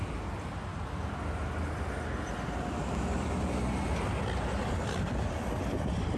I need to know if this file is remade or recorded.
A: recorded